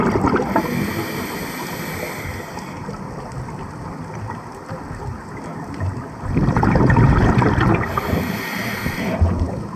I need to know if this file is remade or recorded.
recorded